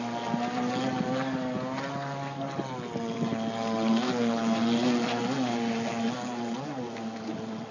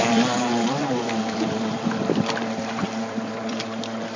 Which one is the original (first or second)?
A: first